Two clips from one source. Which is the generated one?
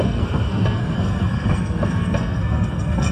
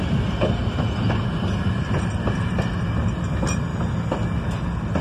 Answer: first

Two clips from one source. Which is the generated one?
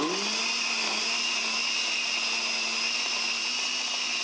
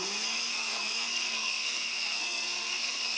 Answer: second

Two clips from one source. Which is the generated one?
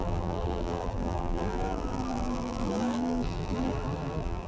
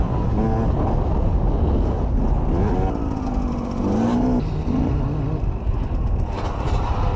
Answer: first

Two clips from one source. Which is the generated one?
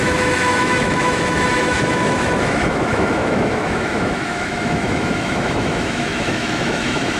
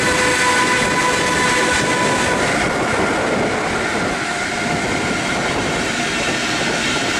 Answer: first